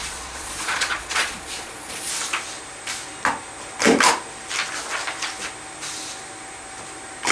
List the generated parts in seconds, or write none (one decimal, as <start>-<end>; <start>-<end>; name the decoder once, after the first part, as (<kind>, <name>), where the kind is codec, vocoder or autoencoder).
0.0-2.1 (vocoder, Vocos)